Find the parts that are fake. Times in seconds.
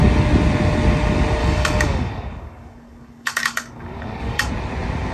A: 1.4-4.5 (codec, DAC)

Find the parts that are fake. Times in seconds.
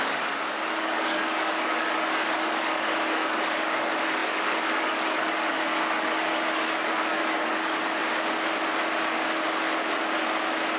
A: 0.0-8.0 (codec, DAC)